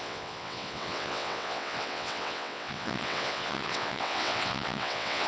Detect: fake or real fake